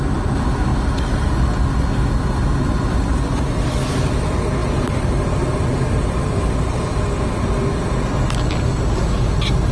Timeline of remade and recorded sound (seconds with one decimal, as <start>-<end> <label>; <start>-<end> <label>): 0.0-9.7 recorded